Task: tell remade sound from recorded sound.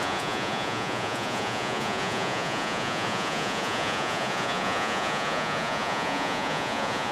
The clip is remade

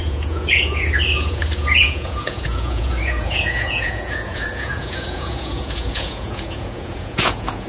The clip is remade